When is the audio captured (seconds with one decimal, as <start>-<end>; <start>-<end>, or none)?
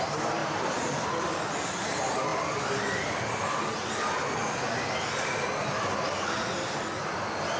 0.0-0.4; 1.0-7.6